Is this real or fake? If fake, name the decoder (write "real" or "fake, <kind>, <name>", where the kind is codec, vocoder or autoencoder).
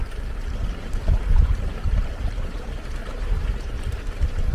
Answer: fake, vocoder, BigVGAN v2